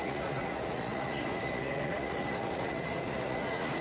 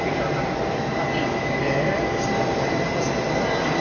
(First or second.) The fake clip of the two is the first